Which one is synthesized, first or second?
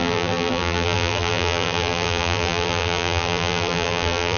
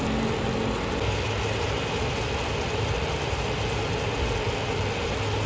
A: first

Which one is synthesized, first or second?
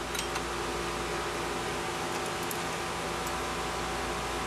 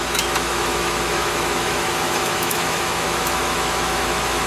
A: second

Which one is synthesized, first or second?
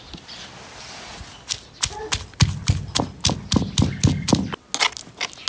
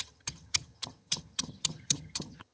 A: second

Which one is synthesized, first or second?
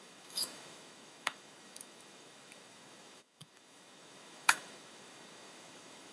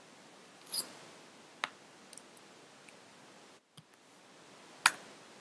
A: first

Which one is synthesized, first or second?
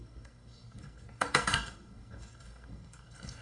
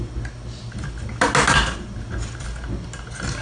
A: first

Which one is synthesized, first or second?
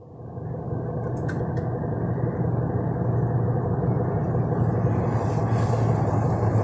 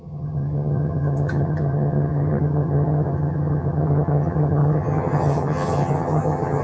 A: second